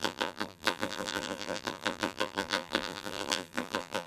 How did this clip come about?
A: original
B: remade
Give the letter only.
B